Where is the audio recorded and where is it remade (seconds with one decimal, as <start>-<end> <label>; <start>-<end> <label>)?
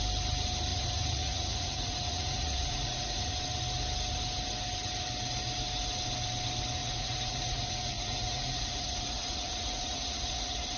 0.0-0.7 recorded; 0.7-3.3 remade; 3.3-6.8 recorded; 6.8-10.8 remade